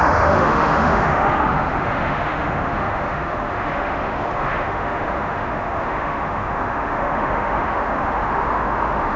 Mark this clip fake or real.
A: fake